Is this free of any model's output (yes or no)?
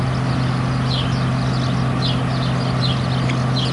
yes